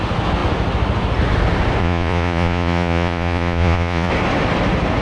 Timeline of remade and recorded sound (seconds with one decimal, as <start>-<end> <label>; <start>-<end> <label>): 0.0-1.8 recorded; 1.8-4.1 remade; 4.1-5.0 recorded